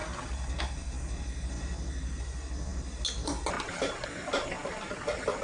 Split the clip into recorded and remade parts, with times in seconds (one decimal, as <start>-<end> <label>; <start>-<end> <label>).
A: 0.0-5.4 recorded